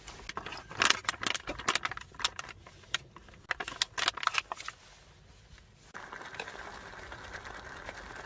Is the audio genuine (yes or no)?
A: yes